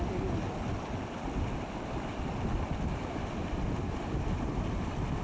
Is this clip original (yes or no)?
yes